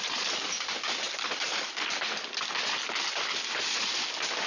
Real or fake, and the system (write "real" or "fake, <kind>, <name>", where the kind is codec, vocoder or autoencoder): real